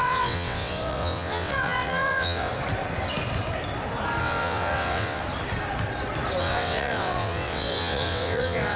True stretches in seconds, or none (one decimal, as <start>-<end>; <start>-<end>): 2.5-4.2; 5.2-6.4